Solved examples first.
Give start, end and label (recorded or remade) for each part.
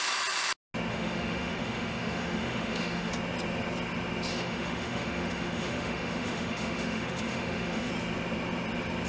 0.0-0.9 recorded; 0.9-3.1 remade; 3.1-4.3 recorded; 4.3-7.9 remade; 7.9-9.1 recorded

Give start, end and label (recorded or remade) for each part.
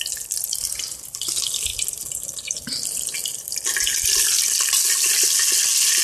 0.0-6.0 recorded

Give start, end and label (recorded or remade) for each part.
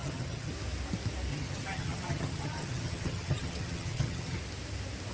0.0-0.5 remade; 0.5-1.3 recorded; 1.3-4.4 remade; 4.4-5.1 recorded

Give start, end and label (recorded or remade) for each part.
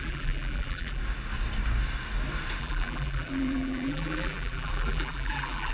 0.0-1.0 remade; 1.0-2.6 recorded; 2.6-5.7 remade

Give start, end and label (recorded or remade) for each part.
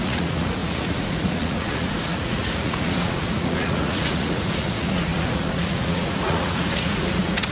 0.0-7.5 remade